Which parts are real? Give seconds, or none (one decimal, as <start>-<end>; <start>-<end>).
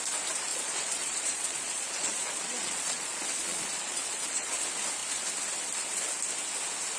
0.0-0.5; 4.5-7.0